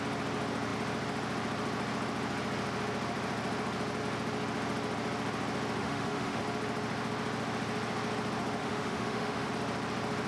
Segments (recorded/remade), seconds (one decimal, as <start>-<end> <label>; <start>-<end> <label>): 0.0-5.8 recorded; 5.8-6.4 remade; 6.4-8.6 recorded; 8.6-9.5 remade; 9.5-10.3 recorded